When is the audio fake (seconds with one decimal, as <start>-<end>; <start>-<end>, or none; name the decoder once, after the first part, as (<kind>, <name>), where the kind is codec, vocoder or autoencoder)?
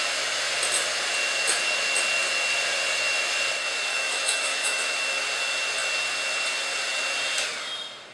3.9-5.2 (autoencoder, DAC-VAE)